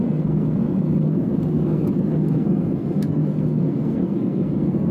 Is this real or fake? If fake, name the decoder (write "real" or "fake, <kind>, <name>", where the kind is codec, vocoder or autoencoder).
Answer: fake, codec, SNAC